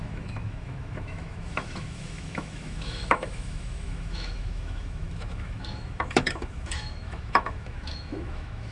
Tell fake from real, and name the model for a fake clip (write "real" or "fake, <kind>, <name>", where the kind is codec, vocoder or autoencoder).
fake, autoencoder, DAC-VAE